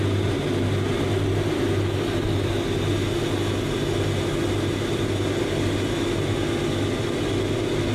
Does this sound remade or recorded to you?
recorded